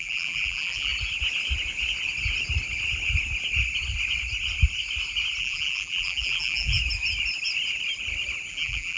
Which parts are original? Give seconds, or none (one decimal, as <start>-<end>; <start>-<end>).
0.9-5.4; 6.8-8.5